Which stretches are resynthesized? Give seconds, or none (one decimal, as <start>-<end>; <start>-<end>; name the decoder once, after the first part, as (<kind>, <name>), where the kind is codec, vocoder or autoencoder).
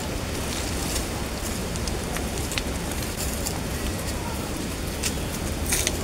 1.6-4.8 (vocoder, BigVGAN v2)